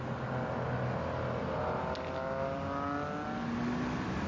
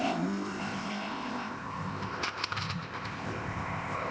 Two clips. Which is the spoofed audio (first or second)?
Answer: second